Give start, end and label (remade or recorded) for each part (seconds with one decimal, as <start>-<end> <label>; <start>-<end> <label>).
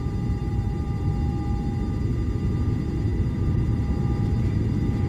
0.0-0.4 recorded; 0.4-1.1 remade; 1.1-3.1 recorded; 3.1-3.8 remade; 3.8-5.1 recorded